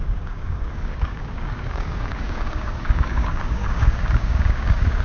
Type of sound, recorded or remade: remade